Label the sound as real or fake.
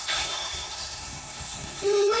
fake